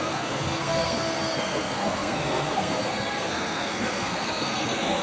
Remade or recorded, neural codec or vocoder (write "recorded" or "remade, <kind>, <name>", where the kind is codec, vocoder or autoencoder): remade, codec, SNAC